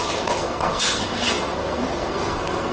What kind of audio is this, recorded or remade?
remade